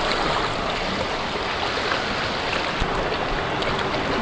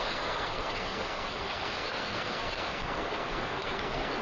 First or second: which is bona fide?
first